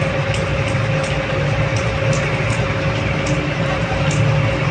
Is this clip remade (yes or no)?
no